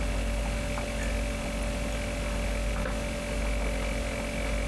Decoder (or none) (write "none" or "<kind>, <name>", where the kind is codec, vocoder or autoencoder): none